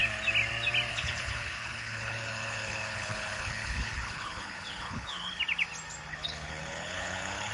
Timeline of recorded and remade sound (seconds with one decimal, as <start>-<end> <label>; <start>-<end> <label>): 0.0-0.9 recorded; 0.9-5.4 remade; 5.4-6.1 recorded; 6.1-7.5 remade